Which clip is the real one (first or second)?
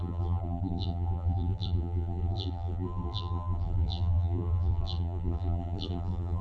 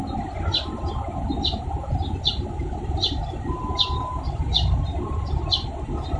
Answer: second